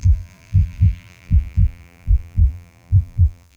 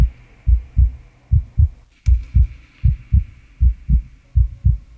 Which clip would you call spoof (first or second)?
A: first